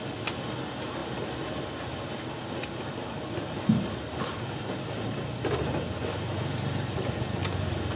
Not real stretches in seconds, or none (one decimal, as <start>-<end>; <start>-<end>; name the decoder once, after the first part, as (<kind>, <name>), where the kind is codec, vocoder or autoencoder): none